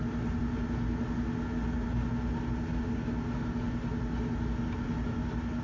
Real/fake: real